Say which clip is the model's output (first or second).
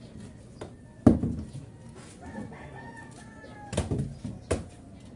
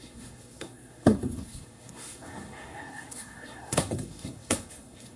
second